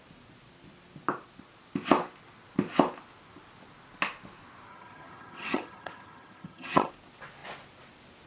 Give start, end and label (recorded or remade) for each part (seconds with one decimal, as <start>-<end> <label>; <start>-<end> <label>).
0.0-4.7 recorded; 4.7-6.9 remade; 6.9-8.3 recorded